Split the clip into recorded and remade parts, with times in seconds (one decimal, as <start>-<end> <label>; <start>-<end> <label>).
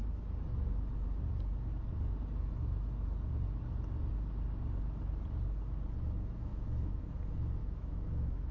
0.0-6.5 recorded; 6.5-7.0 remade; 7.0-7.6 recorded; 7.6-8.5 remade